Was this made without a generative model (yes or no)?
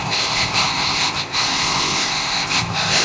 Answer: no